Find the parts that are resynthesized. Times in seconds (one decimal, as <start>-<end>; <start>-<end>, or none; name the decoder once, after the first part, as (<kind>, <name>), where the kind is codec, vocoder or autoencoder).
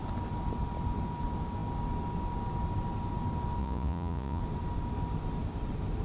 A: 3.6-4.4 (vocoder, Vocos)